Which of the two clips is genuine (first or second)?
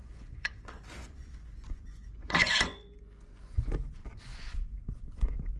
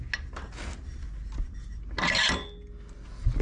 second